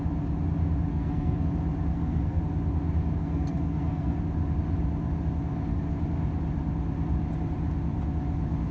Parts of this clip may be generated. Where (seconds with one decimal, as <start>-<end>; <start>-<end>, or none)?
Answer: 0.9-1.5; 1.9-2.4; 3.2-4.2